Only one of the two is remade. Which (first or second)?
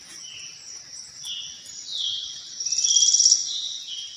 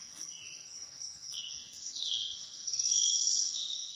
second